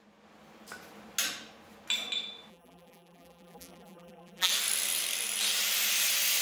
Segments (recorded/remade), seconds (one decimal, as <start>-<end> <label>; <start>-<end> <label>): 0.0-2.5 recorded; 2.5-4.5 remade; 4.5-6.4 recorded